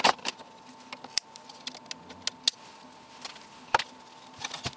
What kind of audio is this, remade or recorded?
recorded